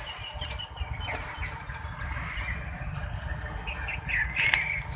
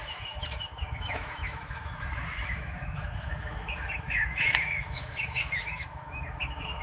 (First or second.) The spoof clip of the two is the second